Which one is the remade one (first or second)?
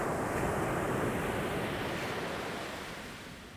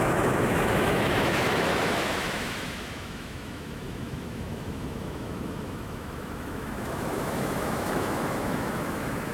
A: second